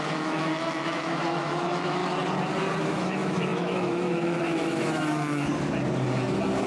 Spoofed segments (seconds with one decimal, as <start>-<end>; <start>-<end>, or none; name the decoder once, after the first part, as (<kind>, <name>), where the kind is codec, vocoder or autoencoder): 0.0-2.0 (autoencoder, DAC-VAE); 2.8-5.5